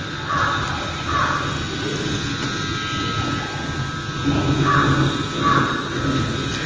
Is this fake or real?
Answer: real